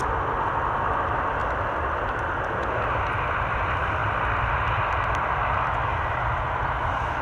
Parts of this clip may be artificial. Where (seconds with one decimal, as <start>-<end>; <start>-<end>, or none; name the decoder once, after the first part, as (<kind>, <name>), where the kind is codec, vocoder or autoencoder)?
none